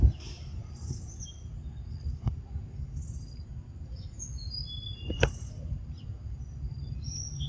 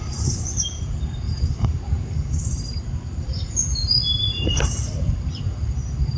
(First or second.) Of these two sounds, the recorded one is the first